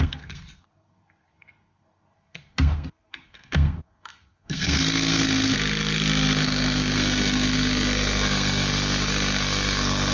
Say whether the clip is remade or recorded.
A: remade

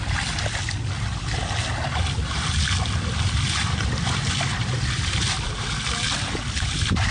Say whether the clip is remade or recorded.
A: recorded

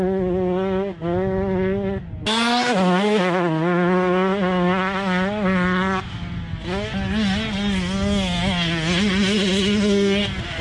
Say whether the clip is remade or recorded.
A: recorded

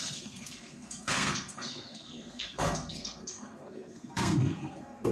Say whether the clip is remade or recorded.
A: remade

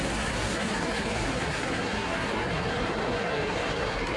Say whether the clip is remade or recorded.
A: remade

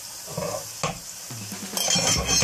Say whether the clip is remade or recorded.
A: recorded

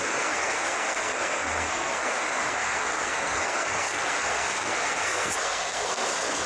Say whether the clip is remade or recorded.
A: remade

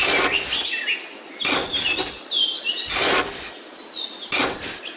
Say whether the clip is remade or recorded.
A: recorded